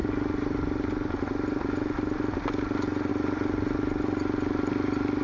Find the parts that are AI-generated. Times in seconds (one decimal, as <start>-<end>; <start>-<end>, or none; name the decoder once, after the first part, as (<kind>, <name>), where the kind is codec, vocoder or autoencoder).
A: none